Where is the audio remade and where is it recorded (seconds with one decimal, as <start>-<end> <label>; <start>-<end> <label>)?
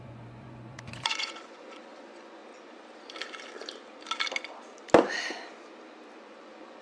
0.0-2.4 remade; 2.4-6.2 recorded; 6.2-6.8 remade